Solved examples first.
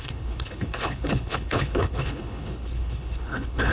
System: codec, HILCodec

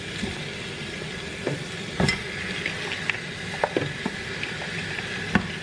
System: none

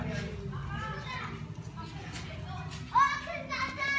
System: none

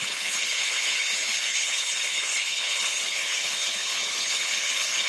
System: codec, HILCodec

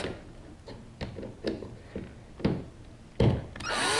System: none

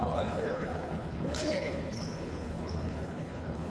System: codec, HILCodec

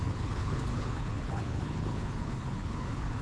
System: codec, HILCodec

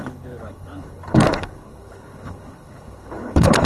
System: codec, HILCodec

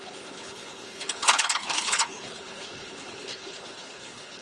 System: codec, HILCodec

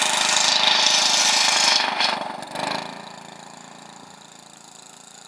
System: none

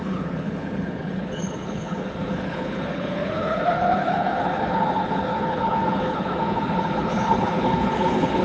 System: codec, HILCodec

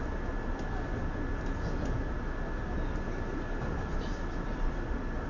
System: none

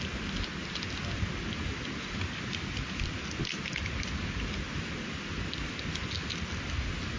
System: none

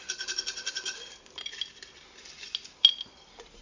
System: none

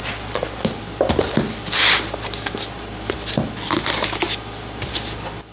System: none